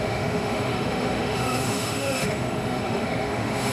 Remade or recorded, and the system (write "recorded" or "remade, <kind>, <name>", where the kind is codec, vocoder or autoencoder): remade, autoencoder, DAC-VAE